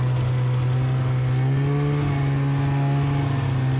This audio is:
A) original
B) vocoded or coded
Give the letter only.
A